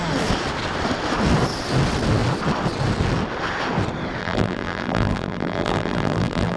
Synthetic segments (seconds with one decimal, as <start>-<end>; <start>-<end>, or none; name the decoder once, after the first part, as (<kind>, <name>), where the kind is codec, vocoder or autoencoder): 4.2-6.6 (vocoder, BigVGAN v2)